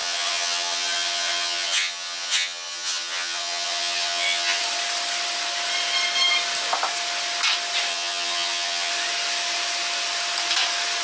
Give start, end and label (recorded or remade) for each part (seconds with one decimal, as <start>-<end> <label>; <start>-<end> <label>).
0.0-4.6 remade; 4.6-7.9 recorded; 7.9-8.9 remade; 8.9-11.0 recorded